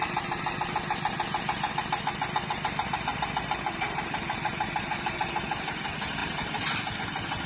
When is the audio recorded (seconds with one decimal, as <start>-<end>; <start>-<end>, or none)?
0.0-3.1; 5.2-7.5